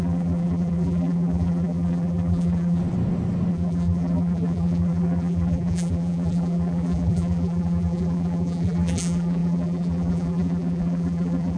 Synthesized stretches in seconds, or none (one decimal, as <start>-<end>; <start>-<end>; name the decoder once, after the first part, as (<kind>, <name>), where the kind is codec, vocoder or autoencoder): 0.0-2.8 (vocoder, BigVGAN v2); 3.5-11.6